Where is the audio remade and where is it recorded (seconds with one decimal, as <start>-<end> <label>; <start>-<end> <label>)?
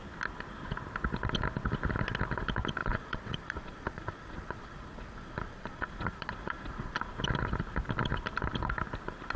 0.0-2.8 recorded; 2.8-7.1 remade; 7.1-9.4 recorded